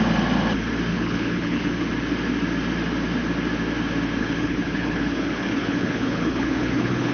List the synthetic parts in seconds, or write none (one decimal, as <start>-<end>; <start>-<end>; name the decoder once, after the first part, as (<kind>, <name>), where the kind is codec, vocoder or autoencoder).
0.9-1.9 (codec, HILCodec); 4.2-7.1